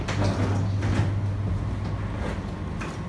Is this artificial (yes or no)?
no